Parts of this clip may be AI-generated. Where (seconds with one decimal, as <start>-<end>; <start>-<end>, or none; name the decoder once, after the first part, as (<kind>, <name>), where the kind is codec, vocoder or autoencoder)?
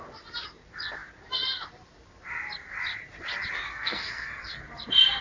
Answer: 3.7-4.6 (codec, SNAC)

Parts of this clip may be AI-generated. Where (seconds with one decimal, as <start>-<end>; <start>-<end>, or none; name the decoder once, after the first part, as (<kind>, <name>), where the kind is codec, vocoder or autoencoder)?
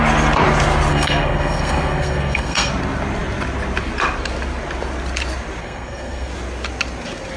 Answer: 0.9-2.7 (codec, SNAC); 5.6-6.3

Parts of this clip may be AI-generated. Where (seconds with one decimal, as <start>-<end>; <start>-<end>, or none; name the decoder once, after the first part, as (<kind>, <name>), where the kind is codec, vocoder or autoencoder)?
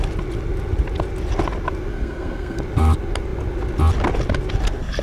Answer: 1.9-2.6 (codec, SNAC)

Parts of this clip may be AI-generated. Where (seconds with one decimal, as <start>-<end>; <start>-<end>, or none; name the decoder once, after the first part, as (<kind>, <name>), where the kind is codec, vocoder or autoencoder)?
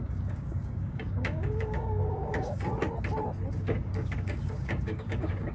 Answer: 0.0-2.7 (codec, DAC); 3.5-5.5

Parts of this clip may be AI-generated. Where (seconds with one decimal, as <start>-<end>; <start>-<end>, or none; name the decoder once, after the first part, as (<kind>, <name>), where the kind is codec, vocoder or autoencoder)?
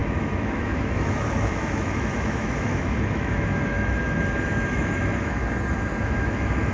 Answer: 0.0-5.4 (autoencoder, DAC-VAE); 6.0-6.7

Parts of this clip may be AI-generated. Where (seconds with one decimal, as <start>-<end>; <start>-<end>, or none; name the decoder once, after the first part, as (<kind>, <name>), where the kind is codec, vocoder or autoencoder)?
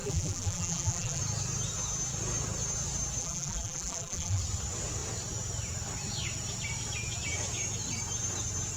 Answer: 0.0-1.2 (vocoder, BigVGAN v2); 3.2-4.4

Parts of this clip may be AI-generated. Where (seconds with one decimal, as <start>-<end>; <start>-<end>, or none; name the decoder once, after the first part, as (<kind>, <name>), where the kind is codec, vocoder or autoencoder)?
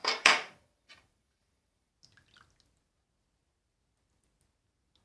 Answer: 0.0-1.9 (vocoder, BigVGAN v2)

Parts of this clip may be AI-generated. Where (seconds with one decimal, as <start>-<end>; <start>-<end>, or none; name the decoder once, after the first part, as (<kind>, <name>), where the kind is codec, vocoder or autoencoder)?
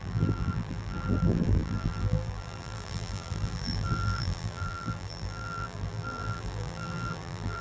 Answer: 0.0-7.6 (vocoder, BigVGAN v2)